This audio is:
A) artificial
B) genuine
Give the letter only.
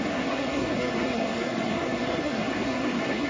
A